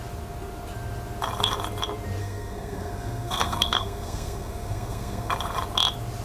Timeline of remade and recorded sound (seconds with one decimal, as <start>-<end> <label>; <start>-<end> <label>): 0.0-2.2 recorded; 2.2-5.3 remade; 5.3-6.2 recorded

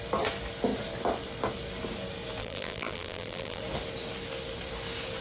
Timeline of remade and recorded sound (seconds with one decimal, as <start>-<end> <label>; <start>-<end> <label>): 0.0-2.4 recorded; 2.4-3.6 remade; 3.6-5.2 recorded

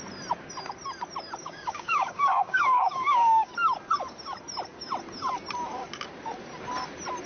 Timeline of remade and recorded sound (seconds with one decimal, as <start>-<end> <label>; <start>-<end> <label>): 0.0-1.4 recorded; 1.4-3.5 remade; 3.5-7.3 recorded

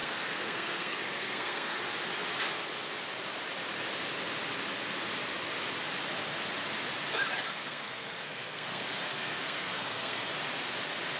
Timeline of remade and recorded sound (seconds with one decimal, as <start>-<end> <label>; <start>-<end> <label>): 0.0-1.8 remade; 1.8-7.5 recorded; 7.5-10.3 remade; 10.3-11.2 recorded